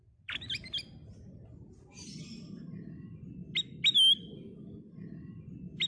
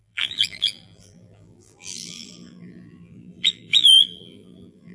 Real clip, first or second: first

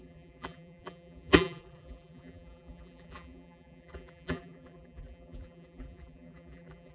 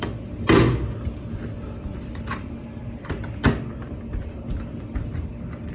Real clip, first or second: second